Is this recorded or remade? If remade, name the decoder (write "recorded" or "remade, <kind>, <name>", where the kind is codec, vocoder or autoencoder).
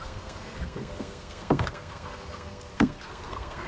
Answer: remade, codec, SNAC